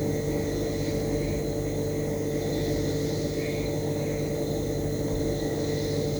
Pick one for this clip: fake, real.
real